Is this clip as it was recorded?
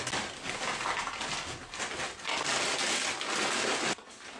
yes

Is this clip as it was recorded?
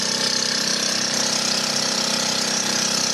no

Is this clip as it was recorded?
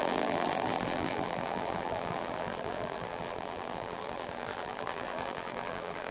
no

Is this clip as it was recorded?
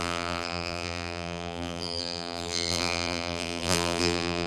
no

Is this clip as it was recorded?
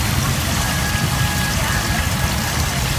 yes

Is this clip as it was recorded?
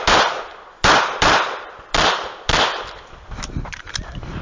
yes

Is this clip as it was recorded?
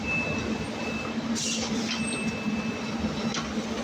yes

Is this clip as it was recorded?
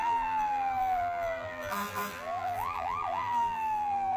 no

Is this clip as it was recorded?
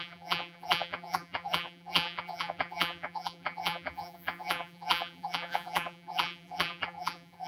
no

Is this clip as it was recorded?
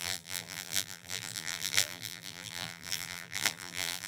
no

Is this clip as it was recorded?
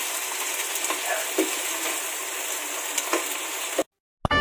yes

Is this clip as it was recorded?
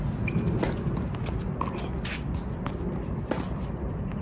yes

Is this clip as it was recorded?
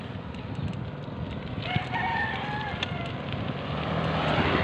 yes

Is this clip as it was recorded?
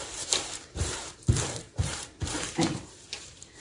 no